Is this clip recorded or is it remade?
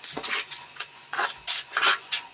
remade